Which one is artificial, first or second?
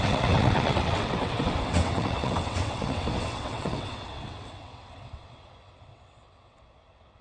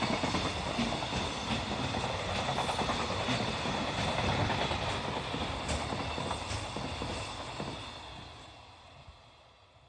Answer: first